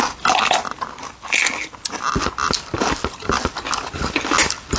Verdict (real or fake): real